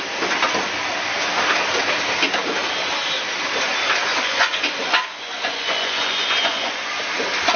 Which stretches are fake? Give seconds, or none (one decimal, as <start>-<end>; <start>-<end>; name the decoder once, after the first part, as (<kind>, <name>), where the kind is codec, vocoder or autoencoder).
4.1-7.0 (vocoder, Vocos)